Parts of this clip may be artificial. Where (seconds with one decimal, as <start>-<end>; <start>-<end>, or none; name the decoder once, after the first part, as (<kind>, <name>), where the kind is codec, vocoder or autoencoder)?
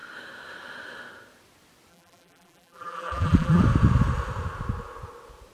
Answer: 1.9-3.6 (vocoder, BigVGAN v2)